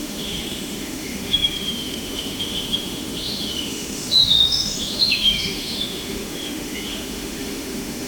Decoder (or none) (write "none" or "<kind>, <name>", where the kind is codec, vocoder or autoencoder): autoencoder, DAC-VAE